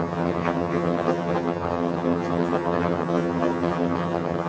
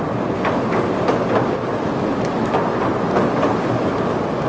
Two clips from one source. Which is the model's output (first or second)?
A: first